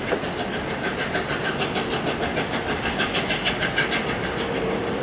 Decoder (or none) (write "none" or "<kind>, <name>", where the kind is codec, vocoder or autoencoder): none